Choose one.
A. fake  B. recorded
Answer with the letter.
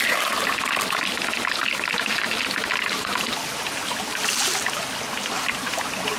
B